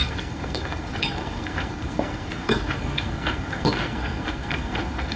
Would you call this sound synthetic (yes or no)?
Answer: yes